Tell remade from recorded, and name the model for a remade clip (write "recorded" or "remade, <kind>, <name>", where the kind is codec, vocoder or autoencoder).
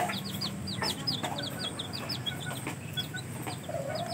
recorded